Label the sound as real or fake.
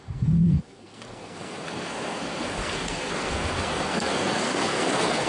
fake